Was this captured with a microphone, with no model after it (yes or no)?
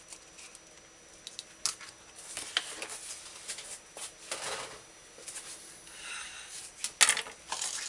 yes